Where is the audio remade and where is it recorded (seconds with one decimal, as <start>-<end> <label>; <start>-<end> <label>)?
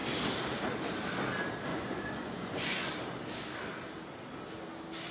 0.0-1.7 recorded; 1.7-2.9 remade; 2.9-5.1 recorded